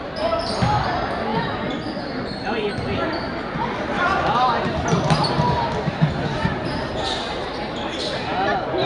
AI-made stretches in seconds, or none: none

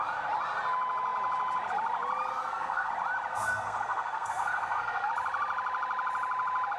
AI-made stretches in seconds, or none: 2.3-2.9 (codec, SNAC); 3.3-5.1

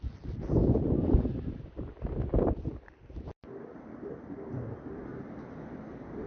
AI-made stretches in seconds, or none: 0.0-5.1 (vocoder, BigVGAN v2); 5.8-6.3

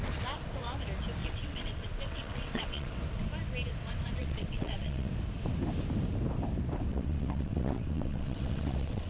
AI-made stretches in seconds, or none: 1.2-2.9 (vocoder, WaveNeXt); 4.2-5.1; 6.9-9.1

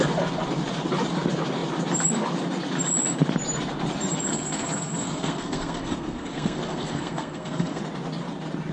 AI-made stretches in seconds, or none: 4.3-7.8 (codec, SNAC)

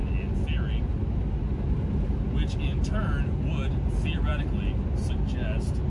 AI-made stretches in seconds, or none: none

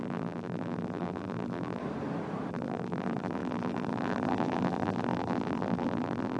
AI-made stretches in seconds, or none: 0.0-1.8 (vocoder, BigVGAN v2); 2.5-6.4

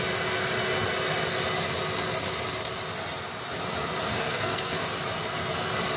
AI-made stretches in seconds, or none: 4.1-4.8 (codec, SNAC)